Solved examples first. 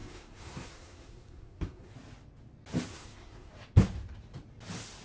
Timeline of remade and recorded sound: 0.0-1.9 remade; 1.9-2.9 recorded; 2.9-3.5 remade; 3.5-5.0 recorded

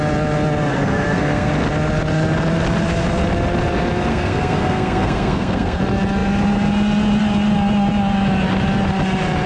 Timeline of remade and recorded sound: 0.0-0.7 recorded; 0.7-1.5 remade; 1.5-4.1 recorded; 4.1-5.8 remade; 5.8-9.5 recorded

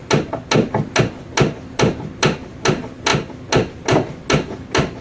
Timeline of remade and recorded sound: 0.0-5.0 recorded

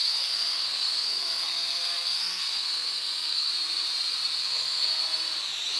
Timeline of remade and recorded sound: 0.0-3.5 remade; 3.5-4.4 recorded; 4.4-5.0 remade; 5.0-5.8 recorded